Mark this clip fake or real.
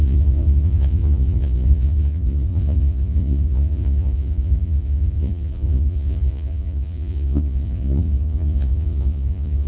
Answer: fake